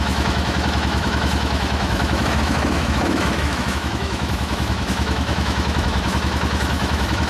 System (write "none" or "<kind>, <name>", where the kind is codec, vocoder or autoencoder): autoencoder, DAC-VAE